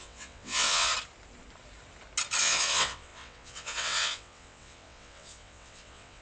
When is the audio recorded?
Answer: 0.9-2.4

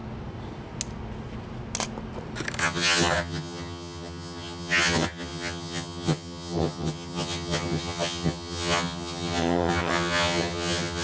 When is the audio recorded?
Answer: 0.0-2.6

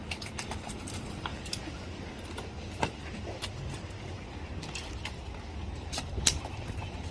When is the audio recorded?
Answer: 1.3-5.6